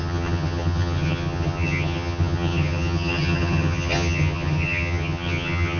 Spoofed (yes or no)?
yes